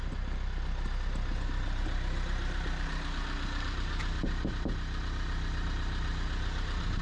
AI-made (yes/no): no